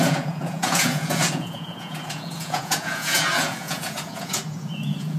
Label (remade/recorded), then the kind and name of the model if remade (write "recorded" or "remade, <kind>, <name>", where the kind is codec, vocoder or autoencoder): remade, vocoder, Vocos